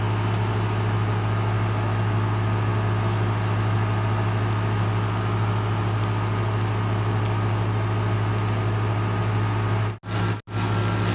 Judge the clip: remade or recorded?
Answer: recorded